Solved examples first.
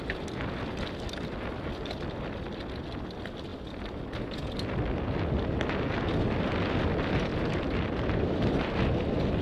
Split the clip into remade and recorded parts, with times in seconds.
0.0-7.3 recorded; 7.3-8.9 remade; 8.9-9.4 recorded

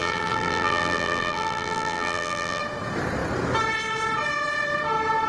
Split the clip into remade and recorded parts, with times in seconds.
0.0-2.6 remade; 2.6-5.3 recorded

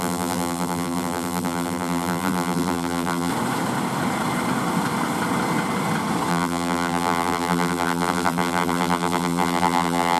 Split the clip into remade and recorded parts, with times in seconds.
0.0-3.3 remade; 3.3-6.3 recorded; 6.3-10.2 remade

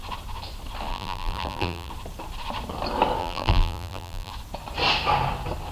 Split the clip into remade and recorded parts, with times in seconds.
0.0-0.9 recorded; 0.9-1.9 remade; 1.9-3.2 recorded; 3.2-4.3 remade; 4.3-5.7 recorded

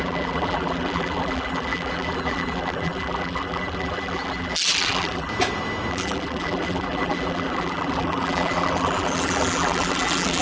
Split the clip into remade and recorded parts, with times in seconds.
0.0-5.3 remade; 5.3-5.9 recorded; 5.9-10.4 remade

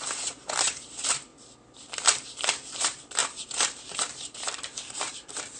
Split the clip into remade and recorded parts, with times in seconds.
0.0-1.3 remade; 1.3-2.7 recorded; 2.7-5.6 remade

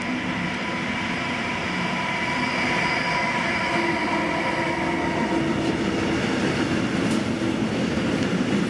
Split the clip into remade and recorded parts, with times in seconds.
0.0-8.7 recorded

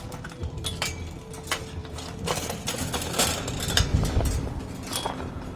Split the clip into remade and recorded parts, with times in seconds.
0.0-0.4 recorded; 0.4-0.9 remade; 0.9-1.8 recorded; 1.8-2.6 remade; 2.6-3.9 recorded; 3.9-4.6 remade; 4.6-5.6 recorded